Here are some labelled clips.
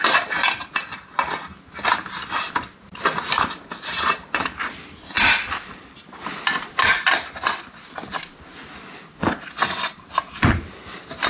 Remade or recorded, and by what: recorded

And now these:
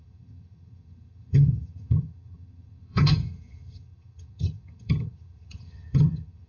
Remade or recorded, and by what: remade, vocoder, HiFi-GAN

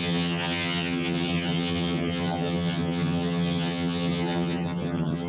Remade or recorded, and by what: remade, vocoder, HiFi-GAN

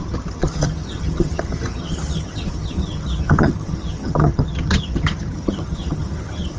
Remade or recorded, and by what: remade, vocoder, HiFi-GAN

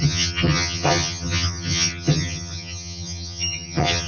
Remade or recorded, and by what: remade, vocoder, HiFi-GAN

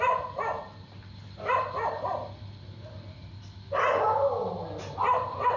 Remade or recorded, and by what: recorded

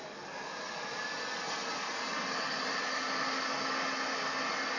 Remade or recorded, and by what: recorded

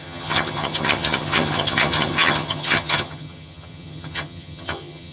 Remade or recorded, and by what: remade, vocoder, HiFi-GAN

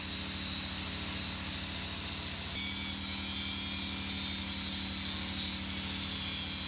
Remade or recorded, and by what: recorded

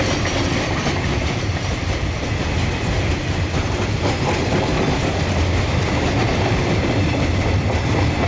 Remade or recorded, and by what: recorded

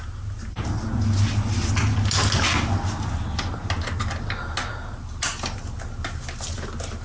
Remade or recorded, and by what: recorded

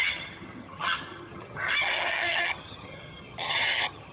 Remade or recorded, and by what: remade, vocoder, HiFi-GAN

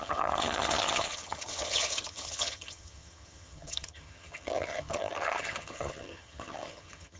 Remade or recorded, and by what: remade, vocoder, HiFi-GAN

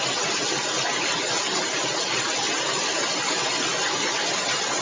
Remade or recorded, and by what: recorded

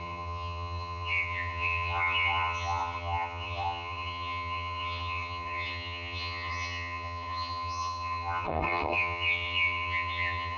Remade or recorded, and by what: remade, vocoder, HiFi-GAN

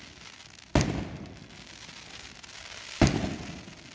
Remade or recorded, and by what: recorded